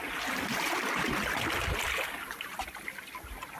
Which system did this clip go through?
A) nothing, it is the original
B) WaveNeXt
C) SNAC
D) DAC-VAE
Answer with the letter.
A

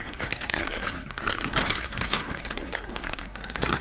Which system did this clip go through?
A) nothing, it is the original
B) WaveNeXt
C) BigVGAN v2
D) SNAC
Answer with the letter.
D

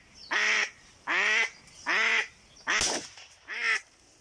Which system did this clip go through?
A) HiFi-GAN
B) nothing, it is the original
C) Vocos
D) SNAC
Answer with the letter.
B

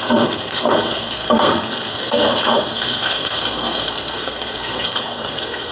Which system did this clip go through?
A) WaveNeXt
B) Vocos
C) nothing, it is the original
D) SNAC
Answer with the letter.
D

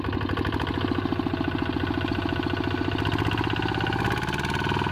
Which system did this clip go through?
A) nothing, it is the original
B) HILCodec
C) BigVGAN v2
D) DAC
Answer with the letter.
A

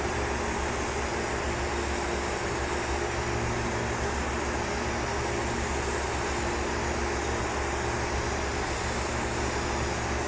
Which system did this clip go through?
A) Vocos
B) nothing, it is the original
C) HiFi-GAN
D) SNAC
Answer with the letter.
B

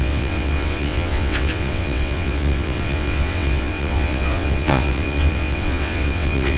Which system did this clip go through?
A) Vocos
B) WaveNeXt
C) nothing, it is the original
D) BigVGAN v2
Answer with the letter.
B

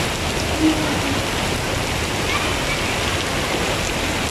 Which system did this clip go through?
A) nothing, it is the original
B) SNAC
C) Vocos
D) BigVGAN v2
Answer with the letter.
A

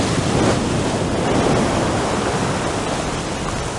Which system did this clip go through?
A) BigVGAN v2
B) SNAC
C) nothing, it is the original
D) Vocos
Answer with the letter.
C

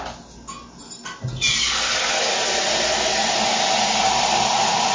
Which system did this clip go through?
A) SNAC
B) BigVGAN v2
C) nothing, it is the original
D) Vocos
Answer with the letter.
C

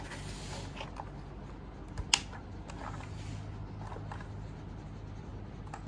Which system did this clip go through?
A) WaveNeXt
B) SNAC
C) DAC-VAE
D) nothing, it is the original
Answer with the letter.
D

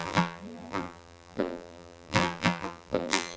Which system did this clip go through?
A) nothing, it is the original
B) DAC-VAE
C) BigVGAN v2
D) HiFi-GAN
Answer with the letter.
C